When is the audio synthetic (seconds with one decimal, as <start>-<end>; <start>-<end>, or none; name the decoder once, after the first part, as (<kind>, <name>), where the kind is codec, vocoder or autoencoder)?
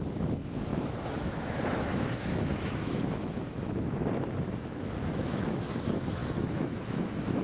0.0-7.4 (autoencoder, DAC-VAE)